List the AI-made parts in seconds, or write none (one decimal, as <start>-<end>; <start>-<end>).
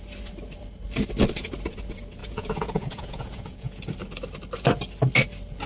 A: 2.2-3.8